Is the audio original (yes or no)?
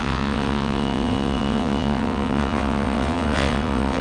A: no